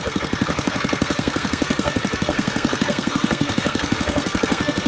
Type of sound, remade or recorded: remade